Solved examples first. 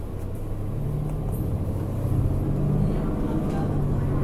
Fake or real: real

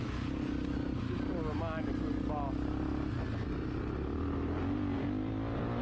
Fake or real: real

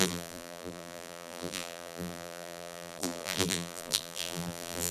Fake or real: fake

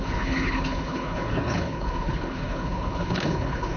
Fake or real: fake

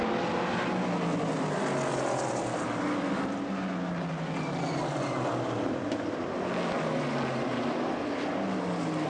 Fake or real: real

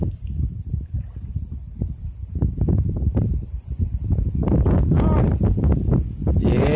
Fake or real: real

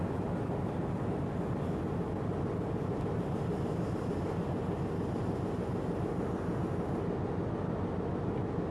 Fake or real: real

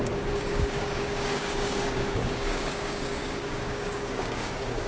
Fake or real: fake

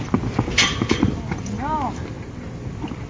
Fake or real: real